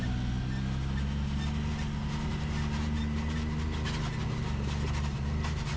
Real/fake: real